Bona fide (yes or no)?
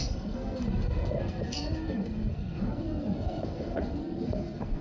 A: no